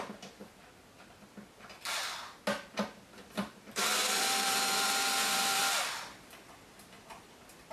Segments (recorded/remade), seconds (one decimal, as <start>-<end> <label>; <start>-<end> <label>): 0.0-0.4 remade; 0.4-3.0 recorded; 3.0-7.7 remade